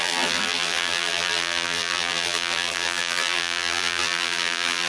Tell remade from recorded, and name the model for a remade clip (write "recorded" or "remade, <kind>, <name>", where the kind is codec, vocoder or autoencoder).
remade, vocoder, BigVGAN v2